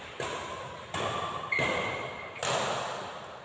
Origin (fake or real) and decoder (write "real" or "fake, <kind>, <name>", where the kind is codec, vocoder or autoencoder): real